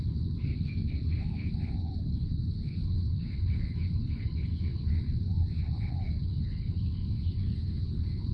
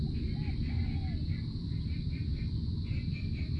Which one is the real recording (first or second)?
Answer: second